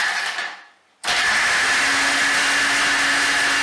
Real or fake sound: real